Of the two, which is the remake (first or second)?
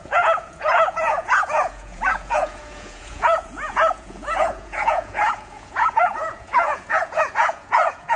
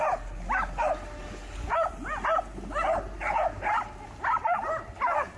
first